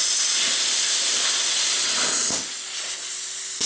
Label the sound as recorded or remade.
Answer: recorded